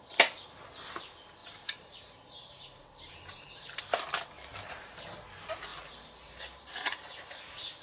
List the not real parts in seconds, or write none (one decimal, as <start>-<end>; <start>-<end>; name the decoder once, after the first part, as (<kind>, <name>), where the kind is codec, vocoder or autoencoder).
1.4-3.8 (vocoder, BigVGAN v2); 5.7-7.0